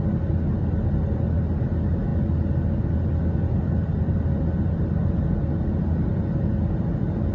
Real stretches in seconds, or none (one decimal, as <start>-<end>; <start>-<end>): 0.0-7.3